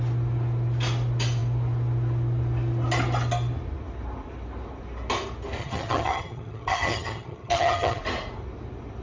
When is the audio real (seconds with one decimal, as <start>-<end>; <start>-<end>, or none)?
0.0-5.6; 8.0-9.0